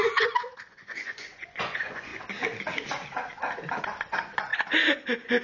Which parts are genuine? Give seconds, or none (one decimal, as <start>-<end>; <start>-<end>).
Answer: 2.1-3.8